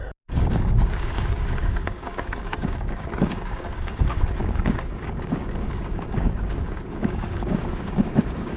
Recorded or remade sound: remade